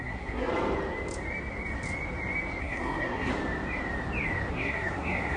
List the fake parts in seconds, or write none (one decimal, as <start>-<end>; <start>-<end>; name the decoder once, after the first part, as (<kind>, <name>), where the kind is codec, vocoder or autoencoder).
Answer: 0.0-0.5 (codec, SNAC); 2.6-3.3; 4.5-5.4